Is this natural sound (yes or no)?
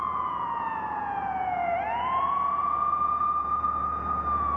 no